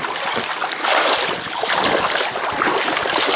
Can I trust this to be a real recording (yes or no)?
yes